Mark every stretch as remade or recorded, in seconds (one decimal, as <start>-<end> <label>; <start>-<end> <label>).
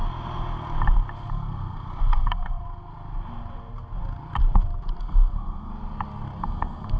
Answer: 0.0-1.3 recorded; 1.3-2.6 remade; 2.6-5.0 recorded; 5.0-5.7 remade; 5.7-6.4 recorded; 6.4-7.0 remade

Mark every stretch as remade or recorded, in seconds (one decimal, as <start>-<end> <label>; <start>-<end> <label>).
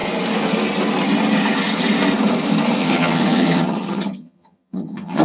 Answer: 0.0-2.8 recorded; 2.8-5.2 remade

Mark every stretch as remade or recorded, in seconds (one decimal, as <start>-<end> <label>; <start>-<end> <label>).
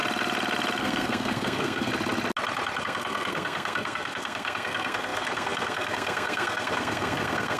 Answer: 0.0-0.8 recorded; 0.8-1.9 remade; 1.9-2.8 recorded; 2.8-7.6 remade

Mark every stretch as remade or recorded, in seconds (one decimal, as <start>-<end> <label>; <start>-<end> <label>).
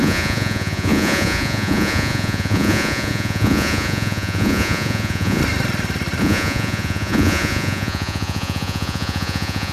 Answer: 0.0-5.4 remade; 5.4-6.2 recorded; 6.2-9.7 remade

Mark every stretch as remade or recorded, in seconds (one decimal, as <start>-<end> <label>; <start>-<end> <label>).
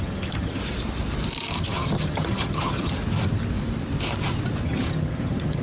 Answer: 0.0-0.6 remade; 0.6-1.6 recorded; 1.6-3.0 remade; 3.0-4.6 recorded; 4.6-5.6 remade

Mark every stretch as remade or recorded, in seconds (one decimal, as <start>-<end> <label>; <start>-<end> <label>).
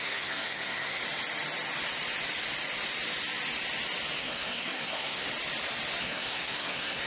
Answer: 0.0-1.0 remade; 1.0-4.2 recorded; 4.2-5.3 remade; 5.3-6.0 recorded; 6.0-7.1 remade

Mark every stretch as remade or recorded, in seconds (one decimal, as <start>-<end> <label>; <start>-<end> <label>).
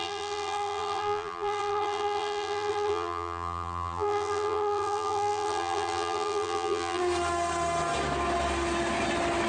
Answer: 0.0-7.0 remade; 7.0-9.5 recorded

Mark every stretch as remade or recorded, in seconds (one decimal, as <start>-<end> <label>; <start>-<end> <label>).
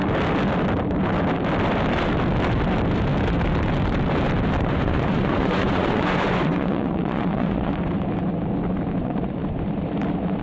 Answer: 0.0-4.6 recorded; 4.6-7.7 remade; 7.7-9.0 recorded; 9.0-9.4 remade; 9.4-10.4 recorded